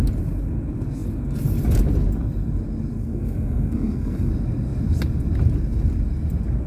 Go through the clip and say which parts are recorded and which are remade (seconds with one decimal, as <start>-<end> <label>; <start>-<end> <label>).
0.0-3.0 recorded; 3.0-4.3 remade; 4.3-6.7 recorded